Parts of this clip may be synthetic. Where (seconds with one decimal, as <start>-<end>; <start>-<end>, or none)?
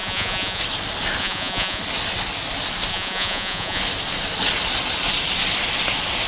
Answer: 0.0-0.6; 1.2-1.8; 2.9-3.8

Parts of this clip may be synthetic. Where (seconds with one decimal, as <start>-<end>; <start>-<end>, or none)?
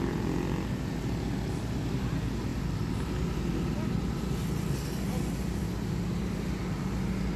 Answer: none